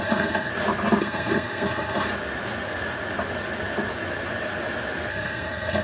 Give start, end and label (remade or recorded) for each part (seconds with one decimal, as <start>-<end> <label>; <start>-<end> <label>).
0.0-0.5 remade; 0.5-1.0 recorded; 1.0-2.1 remade; 2.1-5.1 recorded; 5.1-5.8 remade